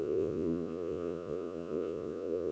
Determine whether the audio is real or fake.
fake